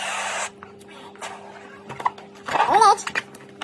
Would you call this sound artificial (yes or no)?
no